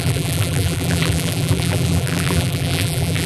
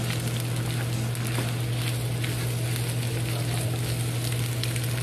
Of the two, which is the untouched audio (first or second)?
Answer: second